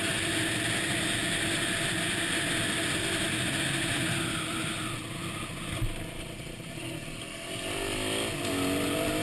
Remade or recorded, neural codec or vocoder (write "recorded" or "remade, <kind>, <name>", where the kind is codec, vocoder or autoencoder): recorded